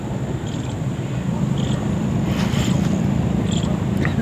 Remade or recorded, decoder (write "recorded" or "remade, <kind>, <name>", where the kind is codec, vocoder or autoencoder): recorded